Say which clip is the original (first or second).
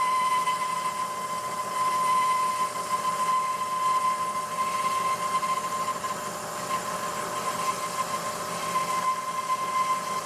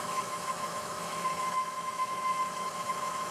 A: first